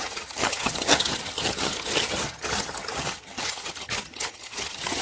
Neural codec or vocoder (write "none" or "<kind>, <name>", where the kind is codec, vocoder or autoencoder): vocoder, HiFi-GAN